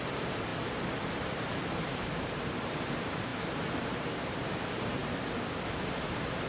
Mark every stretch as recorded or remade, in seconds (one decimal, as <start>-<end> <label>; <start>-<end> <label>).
0.0-0.5 remade; 0.5-1.3 recorded; 1.3-5.0 remade; 5.0-6.1 recorded; 6.1-6.5 remade

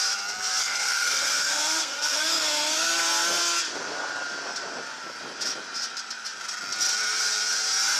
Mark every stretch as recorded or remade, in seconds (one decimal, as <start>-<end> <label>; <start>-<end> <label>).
0.0-0.6 recorded; 0.6-2.9 remade; 2.9-8.0 recorded

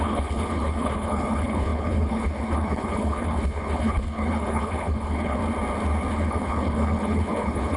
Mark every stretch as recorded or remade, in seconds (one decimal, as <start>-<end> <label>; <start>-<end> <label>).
0.0-5.4 remade; 5.4-6.1 recorded; 6.1-7.8 remade